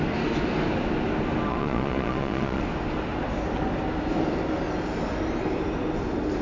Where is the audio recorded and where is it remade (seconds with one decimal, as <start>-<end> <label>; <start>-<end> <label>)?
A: 0.0-1.5 recorded; 1.5-2.6 remade; 2.6-6.4 recorded